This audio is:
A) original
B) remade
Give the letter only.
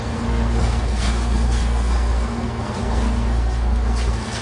B